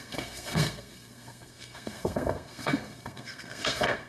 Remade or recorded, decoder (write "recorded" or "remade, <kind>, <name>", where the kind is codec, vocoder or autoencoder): remade, codec, SNAC